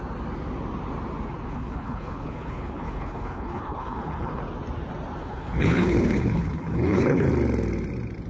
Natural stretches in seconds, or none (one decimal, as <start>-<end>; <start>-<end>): 0.0-1.5; 4.4-5.2; 7.3-8.3